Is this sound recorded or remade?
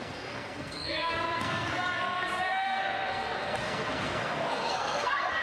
remade